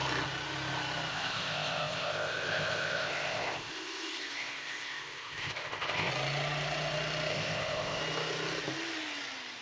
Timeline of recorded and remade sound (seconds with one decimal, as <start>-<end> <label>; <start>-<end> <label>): 0.0-1.1 recorded; 1.1-6.1 remade; 6.1-7.3 recorded; 7.3-8.0 remade; 8.0-9.6 recorded